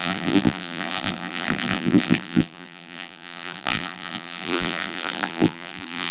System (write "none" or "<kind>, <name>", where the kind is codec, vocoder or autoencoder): vocoder, BigVGAN v2